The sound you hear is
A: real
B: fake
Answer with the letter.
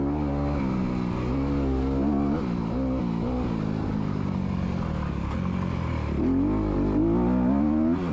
A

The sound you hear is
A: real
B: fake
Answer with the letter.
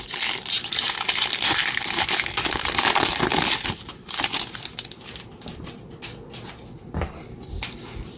A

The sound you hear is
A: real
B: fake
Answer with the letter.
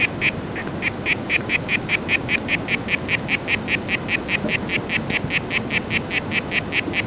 A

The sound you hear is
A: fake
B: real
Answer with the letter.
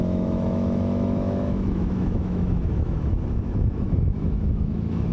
A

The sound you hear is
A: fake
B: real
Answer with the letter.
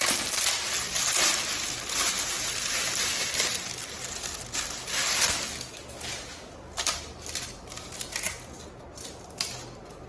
B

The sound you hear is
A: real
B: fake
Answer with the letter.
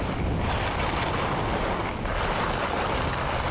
A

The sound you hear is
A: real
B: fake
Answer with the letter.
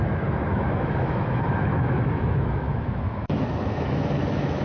B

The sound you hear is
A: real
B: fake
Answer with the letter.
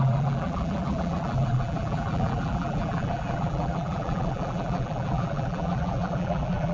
B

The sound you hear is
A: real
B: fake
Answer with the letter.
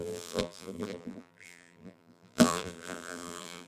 B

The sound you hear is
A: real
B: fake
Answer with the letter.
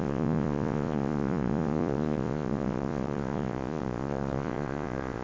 B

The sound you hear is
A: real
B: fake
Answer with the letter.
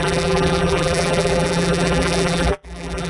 B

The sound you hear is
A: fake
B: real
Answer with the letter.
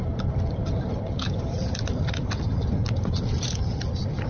B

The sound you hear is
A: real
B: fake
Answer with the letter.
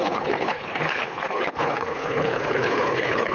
B